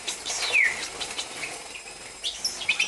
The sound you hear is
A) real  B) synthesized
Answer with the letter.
B